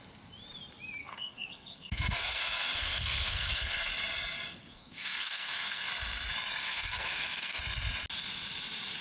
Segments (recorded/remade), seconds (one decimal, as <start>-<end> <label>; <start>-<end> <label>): 0.0-1.0 recorded; 1.0-3.9 remade; 3.9-4.6 recorded; 4.6-5.9 remade; 5.9-6.6 recorded; 6.6-7.6 remade; 7.6-9.0 recorded